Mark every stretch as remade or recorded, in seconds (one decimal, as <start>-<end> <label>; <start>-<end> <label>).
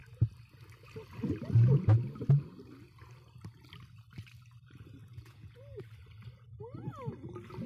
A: 0.0-5.0 recorded; 5.0-5.8 remade; 5.8-7.7 recorded